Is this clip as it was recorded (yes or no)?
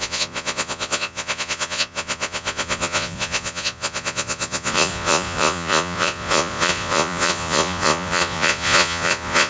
no